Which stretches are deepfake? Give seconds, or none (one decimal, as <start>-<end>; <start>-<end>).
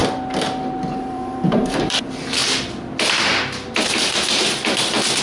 0.9-2.4